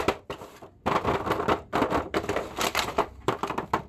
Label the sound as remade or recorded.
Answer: recorded